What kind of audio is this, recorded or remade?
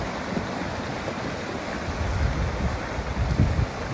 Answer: recorded